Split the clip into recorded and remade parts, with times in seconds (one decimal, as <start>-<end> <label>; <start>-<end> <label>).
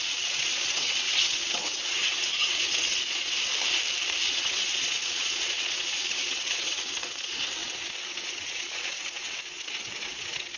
0.0-3.5 remade; 3.5-4.3 recorded; 4.3-10.6 remade